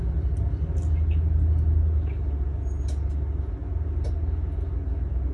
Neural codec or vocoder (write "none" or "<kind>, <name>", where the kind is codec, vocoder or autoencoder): none